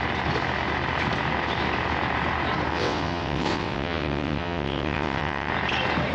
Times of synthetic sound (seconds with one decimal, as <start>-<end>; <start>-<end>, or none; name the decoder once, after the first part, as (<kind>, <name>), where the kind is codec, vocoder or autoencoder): 2.7-5.5 (vocoder, WaveNeXt)